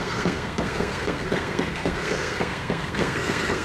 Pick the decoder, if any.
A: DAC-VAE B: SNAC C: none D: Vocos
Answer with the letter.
B